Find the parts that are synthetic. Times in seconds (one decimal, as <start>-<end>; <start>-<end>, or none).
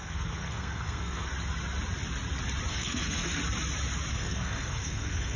0.0-1.3; 2.7-3.4; 4.1-5.4